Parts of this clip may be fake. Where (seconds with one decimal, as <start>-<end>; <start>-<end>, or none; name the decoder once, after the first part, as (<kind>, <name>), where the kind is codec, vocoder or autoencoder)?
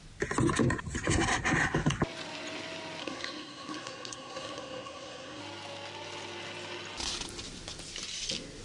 3.0-5.4 (codec, SNAC)